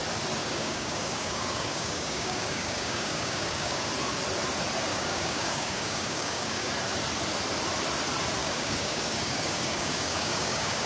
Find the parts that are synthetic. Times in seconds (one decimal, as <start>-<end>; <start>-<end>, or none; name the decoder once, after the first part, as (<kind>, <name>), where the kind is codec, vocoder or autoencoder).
0.4-3.9 (codec, DAC); 4.9-6.7; 8.4-10.9